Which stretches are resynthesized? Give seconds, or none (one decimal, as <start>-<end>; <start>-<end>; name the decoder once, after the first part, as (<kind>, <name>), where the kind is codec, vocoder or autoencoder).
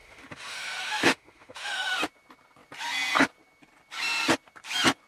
0.0-2.0 (autoencoder, DAC-VAE)